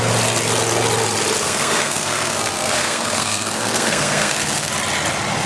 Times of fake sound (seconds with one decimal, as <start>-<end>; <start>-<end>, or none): 1.4-4.7